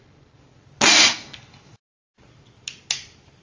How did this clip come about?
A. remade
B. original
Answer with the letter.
B